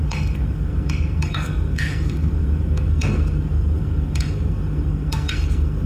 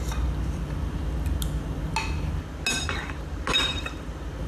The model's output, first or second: first